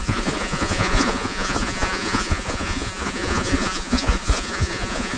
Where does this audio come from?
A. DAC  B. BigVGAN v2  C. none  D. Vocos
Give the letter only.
D